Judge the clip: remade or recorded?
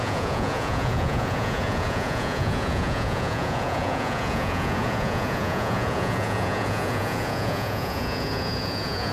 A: remade